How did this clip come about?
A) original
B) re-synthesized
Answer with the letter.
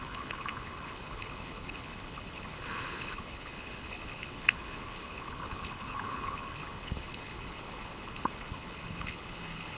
B